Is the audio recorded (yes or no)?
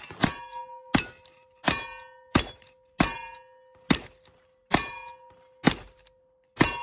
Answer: yes